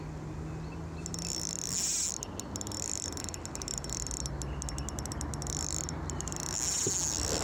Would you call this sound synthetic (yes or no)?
no